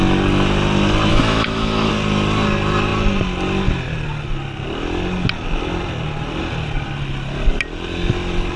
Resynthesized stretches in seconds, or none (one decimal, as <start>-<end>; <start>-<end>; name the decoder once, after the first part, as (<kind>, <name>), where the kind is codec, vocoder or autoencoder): 1.1-1.9 (autoencoder, DAC-VAE)